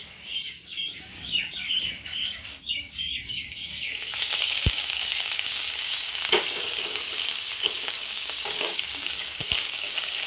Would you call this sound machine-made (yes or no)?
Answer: yes